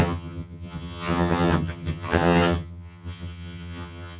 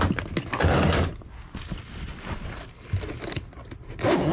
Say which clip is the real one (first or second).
second